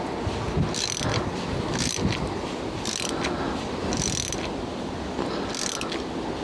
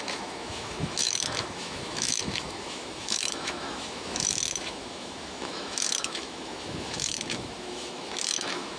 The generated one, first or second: second